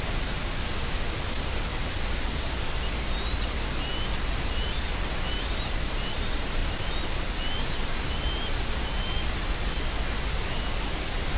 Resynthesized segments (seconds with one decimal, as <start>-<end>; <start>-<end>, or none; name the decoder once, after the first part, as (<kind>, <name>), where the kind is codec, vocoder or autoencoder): none